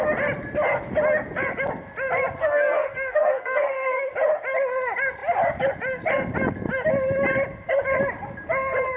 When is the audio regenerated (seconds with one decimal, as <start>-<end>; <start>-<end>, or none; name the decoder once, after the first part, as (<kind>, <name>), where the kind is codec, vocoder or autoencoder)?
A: 2.4-4.1 (codec, SNAC)